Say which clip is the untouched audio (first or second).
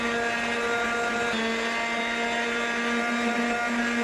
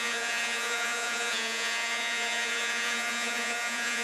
first